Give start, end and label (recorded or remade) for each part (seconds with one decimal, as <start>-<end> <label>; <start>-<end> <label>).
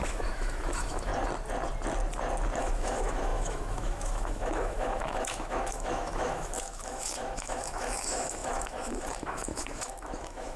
0.0-1.1 remade; 1.1-2.6 recorded; 2.6-10.6 remade